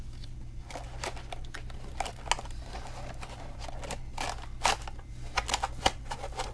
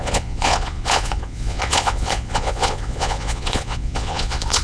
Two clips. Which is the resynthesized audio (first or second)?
second